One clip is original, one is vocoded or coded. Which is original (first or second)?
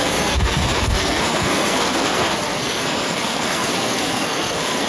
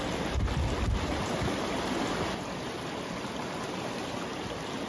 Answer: second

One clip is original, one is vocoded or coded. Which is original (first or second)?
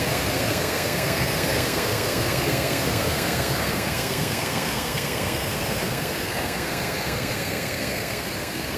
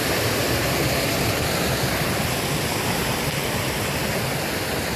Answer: second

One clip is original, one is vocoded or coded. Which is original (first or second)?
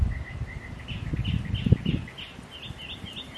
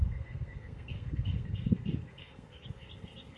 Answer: first